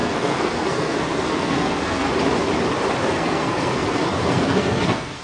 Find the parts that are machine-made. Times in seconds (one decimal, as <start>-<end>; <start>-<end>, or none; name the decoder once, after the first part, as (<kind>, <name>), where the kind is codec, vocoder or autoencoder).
0.0-2.1 (codec, SNAC); 3.0-5.2